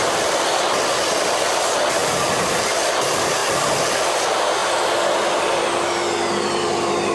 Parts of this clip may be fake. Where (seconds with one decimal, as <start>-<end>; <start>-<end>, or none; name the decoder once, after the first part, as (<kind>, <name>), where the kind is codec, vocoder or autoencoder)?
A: 0.0-3.4 (vocoder, BigVGAN v2); 4.1-4.6; 5.4-7.1